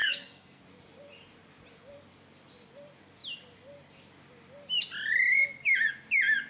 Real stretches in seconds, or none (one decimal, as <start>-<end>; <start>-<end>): 0.6-6.5